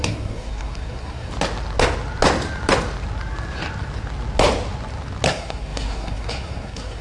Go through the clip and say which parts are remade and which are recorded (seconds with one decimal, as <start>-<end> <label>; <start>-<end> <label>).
0.0-1.3 remade; 1.3-5.3 recorded; 5.3-7.0 remade